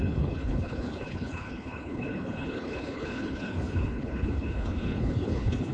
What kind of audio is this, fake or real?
fake